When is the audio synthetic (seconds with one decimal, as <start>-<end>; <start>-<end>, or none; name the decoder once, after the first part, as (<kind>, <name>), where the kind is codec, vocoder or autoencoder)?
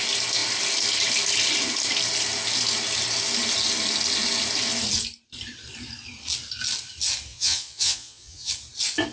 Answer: 7.3-8.5 (vocoder, Vocos)